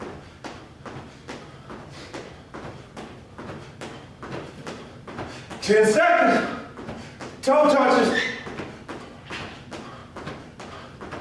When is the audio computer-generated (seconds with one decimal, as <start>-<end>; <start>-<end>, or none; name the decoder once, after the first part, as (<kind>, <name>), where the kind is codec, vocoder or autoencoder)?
none